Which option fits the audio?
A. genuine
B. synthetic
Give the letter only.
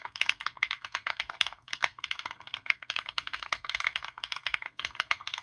B